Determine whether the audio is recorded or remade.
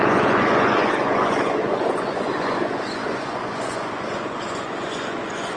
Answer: remade